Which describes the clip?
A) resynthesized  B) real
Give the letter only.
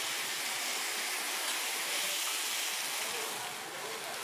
B